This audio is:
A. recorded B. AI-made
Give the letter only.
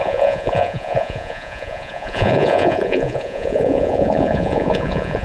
B